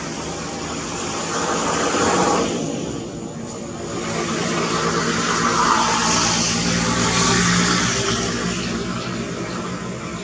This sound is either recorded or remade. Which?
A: recorded